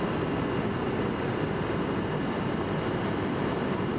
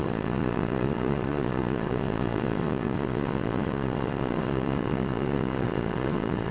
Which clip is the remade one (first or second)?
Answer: second